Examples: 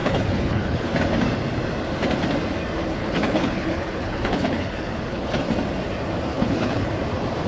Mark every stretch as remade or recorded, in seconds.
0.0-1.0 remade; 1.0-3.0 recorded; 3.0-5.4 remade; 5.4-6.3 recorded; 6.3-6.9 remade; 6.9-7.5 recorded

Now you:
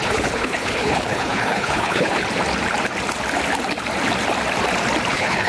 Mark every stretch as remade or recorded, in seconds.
0.0-2.2 remade; 2.2-5.1 recorded; 5.1-5.5 remade

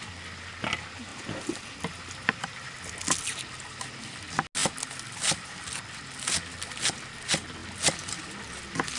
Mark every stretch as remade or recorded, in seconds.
0.0-9.0 recorded